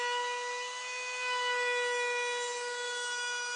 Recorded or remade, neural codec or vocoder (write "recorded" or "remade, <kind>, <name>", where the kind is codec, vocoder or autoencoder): recorded